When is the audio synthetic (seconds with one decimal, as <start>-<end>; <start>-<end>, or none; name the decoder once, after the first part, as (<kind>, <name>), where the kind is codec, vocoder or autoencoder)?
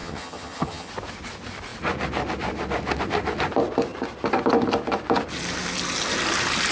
0.0-0.9 (vocoder, HiFi-GAN)